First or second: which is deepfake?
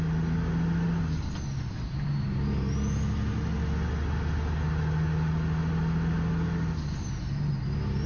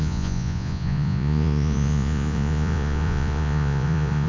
second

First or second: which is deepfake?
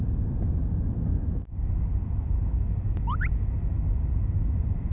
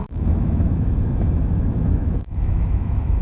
second